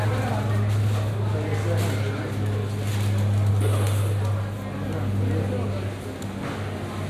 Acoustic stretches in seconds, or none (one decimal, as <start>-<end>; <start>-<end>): 0.0-7.1